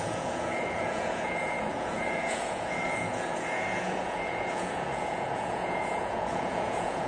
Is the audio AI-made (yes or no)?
yes